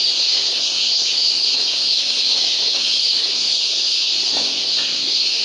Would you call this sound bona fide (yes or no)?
no